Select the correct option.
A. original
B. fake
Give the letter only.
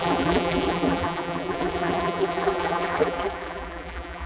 B